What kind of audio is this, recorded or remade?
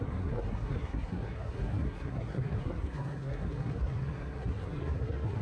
remade